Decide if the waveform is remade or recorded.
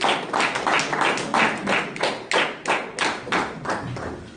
recorded